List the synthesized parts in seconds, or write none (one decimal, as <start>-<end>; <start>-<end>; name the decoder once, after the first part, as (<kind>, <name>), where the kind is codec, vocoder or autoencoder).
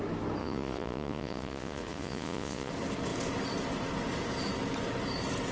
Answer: 0.4-2.7 (vocoder, Vocos)